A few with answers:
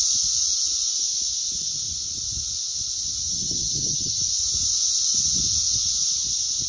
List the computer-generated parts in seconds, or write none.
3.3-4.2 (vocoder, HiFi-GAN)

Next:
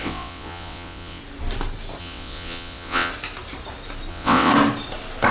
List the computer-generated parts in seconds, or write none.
0.0-1.2 (vocoder, WaveNeXt); 2.0-3.1; 4.1-4.5

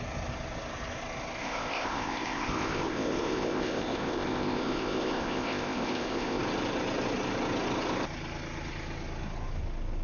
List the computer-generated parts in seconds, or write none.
1.4-6.4 (codec, ZipCodec)

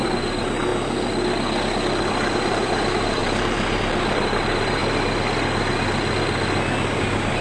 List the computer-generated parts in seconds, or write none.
0.0-0.7 (vocoder, BigVGAN v2); 2.1-4.8; 7.0-7.4

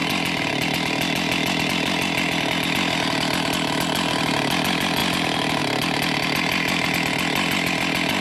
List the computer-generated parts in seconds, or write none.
none

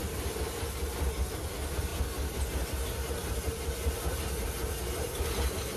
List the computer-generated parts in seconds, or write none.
none